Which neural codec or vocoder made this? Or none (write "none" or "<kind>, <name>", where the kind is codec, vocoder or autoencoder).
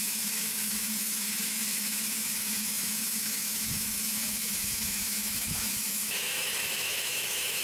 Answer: autoencoder, DAC-VAE